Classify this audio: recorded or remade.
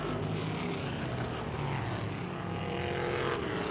recorded